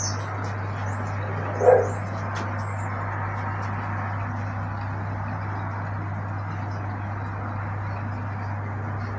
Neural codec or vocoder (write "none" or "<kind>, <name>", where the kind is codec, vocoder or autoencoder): none